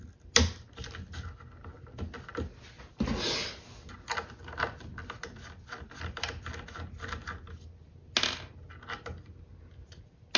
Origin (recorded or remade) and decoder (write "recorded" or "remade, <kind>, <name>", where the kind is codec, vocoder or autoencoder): recorded